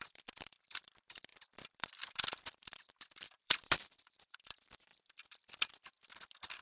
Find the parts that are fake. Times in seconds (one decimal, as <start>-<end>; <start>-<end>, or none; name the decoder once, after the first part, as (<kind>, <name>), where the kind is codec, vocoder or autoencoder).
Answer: 0.0-6.6 (vocoder, BigVGAN v2)